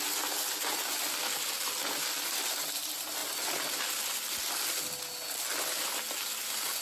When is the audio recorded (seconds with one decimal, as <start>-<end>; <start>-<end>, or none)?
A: 0.0-6.8